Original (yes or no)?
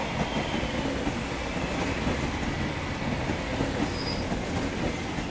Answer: yes